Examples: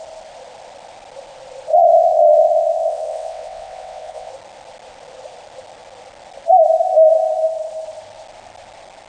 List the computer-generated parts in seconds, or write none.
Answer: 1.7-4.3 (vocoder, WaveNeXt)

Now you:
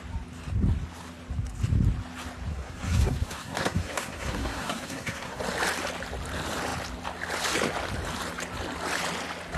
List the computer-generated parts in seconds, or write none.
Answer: 2.5-5.4 (codec, SNAC)

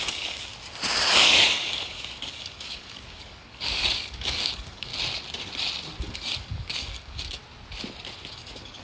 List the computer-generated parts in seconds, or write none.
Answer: 0.0-0.5 (codec, DAC); 1.1-4.9; 6.0-7.4; 8.3-8.8

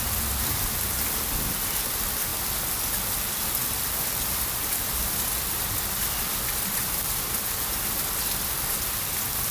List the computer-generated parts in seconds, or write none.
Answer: none

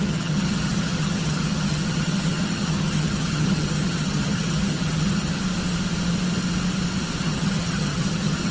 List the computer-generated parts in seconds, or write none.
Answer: 0.0-5.4 (vocoder, HiFi-GAN); 7.2-8.5

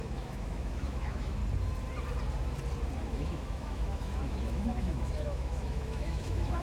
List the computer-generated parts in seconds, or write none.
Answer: 0.0-1.4 (autoencoder, DAC-VAE); 3.1-6.6

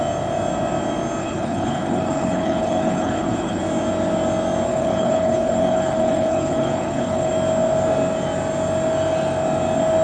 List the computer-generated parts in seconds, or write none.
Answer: 1.2-3.6 (codec, HILCodec); 4.7-7.3